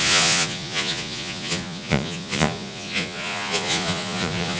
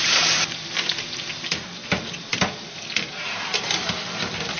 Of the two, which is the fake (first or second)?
first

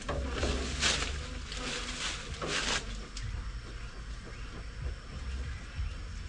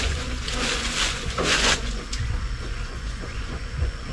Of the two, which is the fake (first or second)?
second